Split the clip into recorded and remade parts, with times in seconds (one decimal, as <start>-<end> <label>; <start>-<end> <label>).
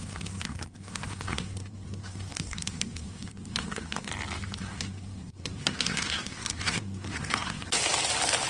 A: 0.0-4.1 remade; 4.1-4.6 recorded; 4.6-7.8 remade; 7.8-8.5 recorded